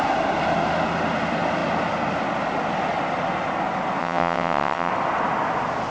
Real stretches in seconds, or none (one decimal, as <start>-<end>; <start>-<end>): 0.0-4.0; 4.9-5.9